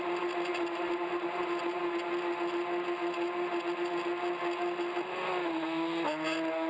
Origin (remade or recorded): recorded